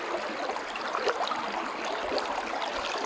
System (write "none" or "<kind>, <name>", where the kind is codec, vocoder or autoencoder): none